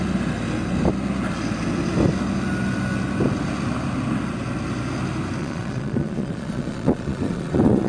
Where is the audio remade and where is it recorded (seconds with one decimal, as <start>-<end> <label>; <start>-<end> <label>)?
0.0-5.4 recorded; 5.4-7.9 remade